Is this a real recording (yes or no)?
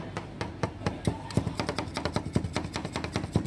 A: yes